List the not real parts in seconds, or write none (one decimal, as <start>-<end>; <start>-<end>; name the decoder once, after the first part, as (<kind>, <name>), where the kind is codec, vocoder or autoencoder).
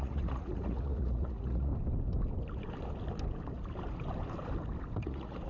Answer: 0.0-1.7 (vocoder, Vocos); 5.0-5.5